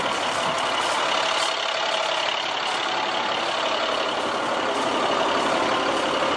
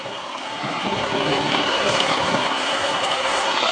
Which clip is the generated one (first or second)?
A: second